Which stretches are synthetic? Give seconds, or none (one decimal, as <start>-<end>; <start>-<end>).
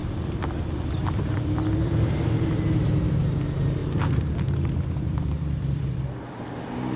0.0-0.6; 1.0-1.9; 3.8-6.4